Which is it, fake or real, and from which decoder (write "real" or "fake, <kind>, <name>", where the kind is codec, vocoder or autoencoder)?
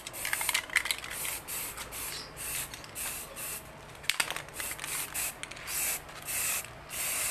real